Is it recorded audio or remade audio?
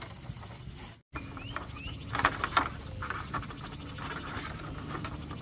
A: recorded